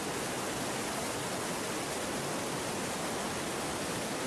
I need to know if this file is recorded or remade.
recorded